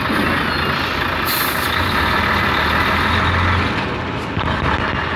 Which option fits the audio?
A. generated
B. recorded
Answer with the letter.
B